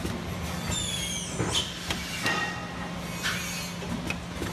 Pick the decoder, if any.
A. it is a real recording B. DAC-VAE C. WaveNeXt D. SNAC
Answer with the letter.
A